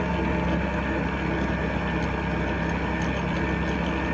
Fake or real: real